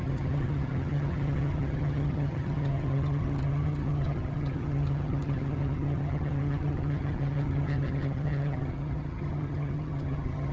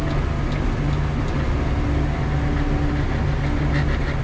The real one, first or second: second